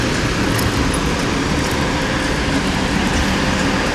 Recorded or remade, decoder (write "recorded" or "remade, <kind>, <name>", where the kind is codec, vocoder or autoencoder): recorded